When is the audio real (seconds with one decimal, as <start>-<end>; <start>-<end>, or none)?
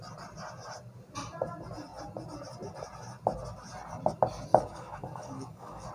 0.0-4.5